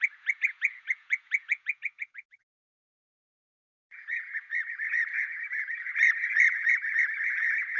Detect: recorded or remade remade